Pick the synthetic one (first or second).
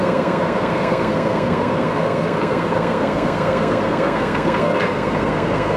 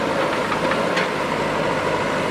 first